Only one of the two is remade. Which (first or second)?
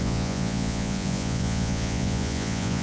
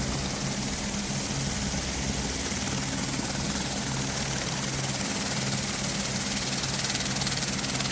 first